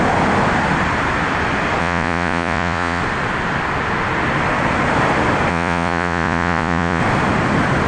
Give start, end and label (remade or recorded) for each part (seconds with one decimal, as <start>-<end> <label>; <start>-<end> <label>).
0.0-1.8 recorded; 1.8-3.0 remade; 3.0-5.5 recorded; 5.5-7.0 remade; 7.0-7.9 recorded